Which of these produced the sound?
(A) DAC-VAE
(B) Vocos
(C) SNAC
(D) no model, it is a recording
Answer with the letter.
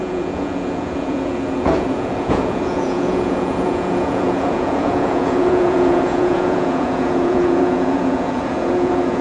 B